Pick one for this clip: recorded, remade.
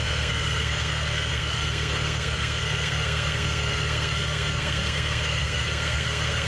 remade